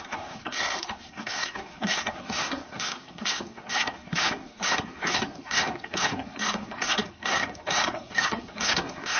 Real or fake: fake